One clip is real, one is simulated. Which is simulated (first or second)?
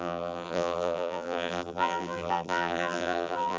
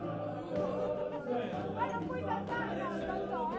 first